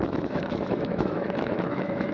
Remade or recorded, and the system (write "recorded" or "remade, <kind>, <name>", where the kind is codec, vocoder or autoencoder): remade, autoencoder, DAC-VAE